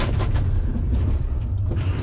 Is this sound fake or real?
fake